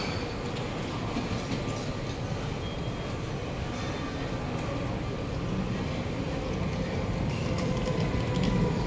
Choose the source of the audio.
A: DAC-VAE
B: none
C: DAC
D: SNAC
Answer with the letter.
B